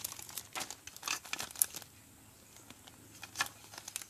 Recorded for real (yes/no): yes